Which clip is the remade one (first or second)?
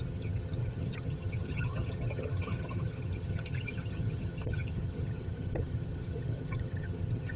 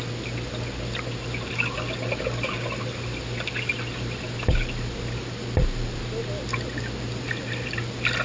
first